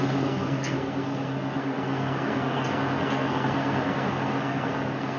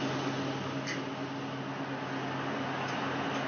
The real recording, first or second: second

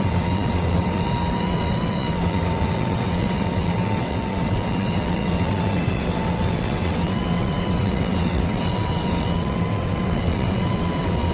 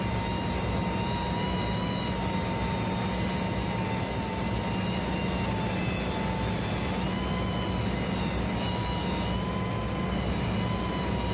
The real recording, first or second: second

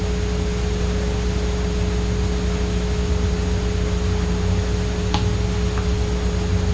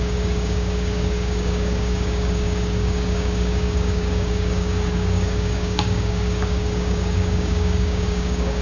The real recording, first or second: first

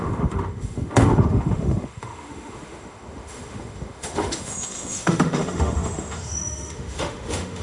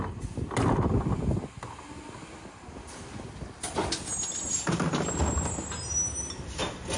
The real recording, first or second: second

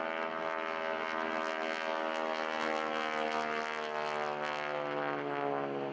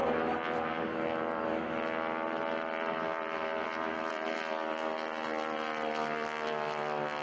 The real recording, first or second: first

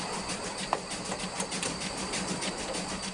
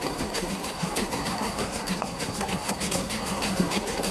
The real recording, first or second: first